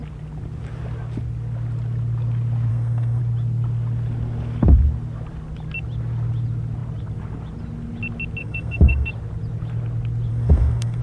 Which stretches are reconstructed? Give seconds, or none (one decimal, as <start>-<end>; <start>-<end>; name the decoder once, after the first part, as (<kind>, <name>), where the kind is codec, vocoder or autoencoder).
2.7-3.2 (codec, SNAC); 8.4-9.1; 10.3-11.0

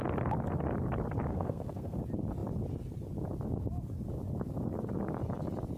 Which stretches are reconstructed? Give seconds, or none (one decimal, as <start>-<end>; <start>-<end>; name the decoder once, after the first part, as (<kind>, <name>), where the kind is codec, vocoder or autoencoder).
1.3-2.0 (codec, SNAC)

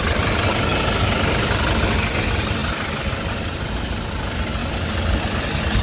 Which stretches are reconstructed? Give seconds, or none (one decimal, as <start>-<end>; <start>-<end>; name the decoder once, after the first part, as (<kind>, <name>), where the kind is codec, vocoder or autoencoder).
none

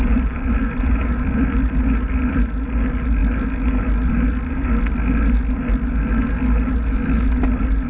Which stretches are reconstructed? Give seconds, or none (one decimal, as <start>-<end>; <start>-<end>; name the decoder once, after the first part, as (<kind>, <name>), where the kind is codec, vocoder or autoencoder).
none

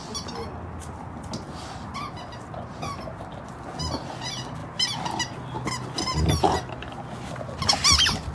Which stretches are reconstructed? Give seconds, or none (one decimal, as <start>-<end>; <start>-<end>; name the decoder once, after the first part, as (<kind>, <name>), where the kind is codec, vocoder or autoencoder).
none

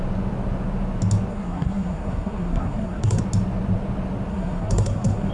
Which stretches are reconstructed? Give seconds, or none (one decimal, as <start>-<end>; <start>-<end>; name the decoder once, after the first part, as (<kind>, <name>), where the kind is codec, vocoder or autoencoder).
1.3-3.2 (codec, SNAC); 4.3-5.3

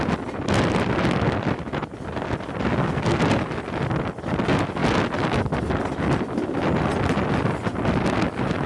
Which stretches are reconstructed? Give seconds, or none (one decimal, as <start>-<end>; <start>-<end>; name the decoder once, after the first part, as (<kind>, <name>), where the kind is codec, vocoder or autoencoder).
2.7-3.2 (codec, SNAC)

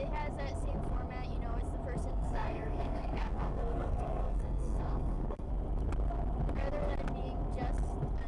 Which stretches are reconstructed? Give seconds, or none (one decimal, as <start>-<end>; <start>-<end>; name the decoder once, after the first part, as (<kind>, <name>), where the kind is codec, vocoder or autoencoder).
2.1-5.5 (codec, SNAC)